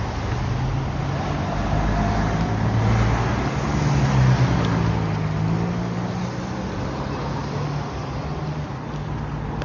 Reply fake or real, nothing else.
real